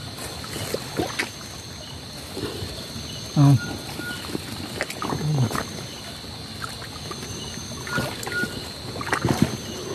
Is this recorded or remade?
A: recorded